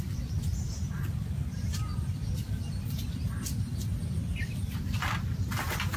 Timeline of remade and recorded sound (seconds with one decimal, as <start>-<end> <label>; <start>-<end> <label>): 0.0-4.3 recorded; 4.3-4.8 remade; 4.8-6.0 recorded